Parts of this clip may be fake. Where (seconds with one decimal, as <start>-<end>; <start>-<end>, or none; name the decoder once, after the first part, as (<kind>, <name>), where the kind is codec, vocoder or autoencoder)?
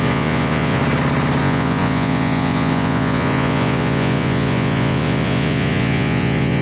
0.0-0.8 (vocoder, Vocos); 1.4-6.6